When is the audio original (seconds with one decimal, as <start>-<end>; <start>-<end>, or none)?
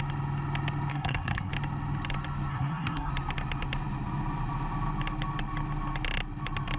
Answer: 0.0-0.9; 1.5-2.5; 3.1-6.8